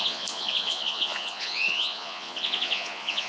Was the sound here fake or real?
fake